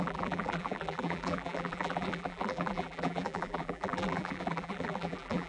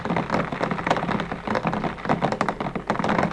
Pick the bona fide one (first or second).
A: second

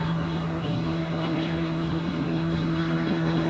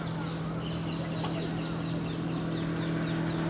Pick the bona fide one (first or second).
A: second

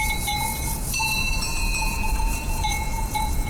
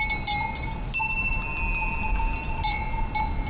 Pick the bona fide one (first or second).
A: second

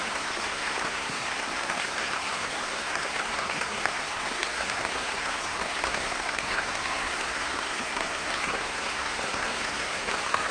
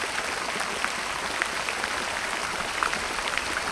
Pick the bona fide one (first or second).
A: second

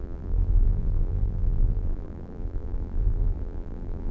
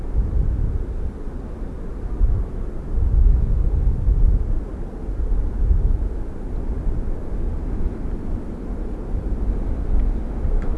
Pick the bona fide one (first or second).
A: second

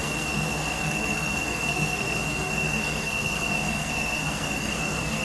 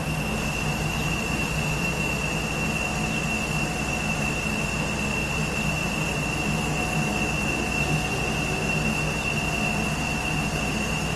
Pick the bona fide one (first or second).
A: second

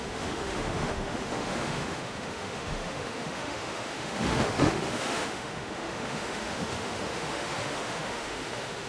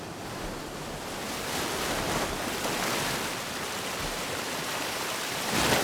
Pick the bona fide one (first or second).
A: second